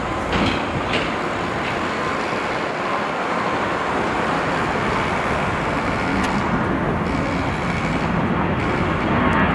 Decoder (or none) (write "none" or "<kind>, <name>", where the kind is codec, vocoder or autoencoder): none